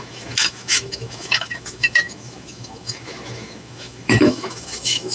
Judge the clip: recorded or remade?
remade